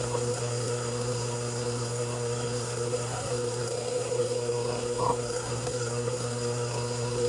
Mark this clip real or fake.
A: fake